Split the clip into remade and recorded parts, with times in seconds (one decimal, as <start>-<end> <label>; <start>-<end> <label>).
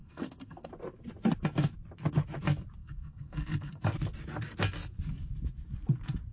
0.0-0.7 remade; 0.7-2.8 recorded; 2.8-3.9 remade; 3.9-6.3 recorded